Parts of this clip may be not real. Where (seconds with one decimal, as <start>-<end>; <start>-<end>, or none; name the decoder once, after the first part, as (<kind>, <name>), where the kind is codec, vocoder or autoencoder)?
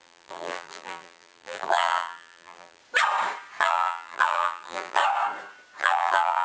0.0-2.8 (vocoder, BigVGAN v2); 3.6-5.0; 5.8-6.4